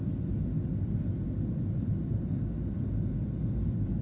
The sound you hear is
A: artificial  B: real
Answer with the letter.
B